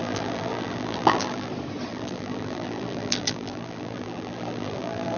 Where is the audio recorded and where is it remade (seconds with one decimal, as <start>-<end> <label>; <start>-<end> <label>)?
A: 0.0-1.5 remade; 1.5-1.9 recorded; 1.9-5.2 remade